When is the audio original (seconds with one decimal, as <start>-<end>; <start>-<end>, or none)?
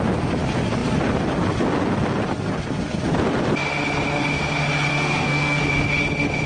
0.0-4.9; 5.6-6.5